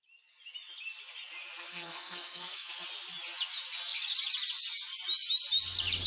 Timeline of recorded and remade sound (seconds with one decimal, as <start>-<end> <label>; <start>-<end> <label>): 0.0-1.7 recorded; 1.7-2.7 remade; 2.7-6.1 recorded